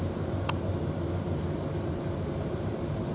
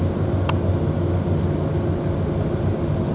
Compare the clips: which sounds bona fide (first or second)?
second